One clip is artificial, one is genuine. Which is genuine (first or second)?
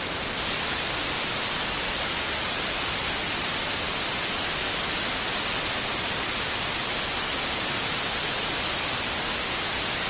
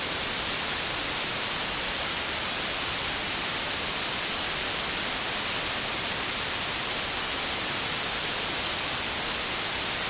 first